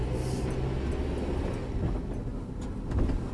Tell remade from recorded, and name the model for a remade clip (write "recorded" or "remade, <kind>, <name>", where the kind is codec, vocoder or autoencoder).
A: recorded